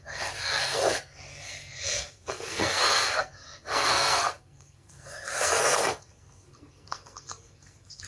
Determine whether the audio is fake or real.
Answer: fake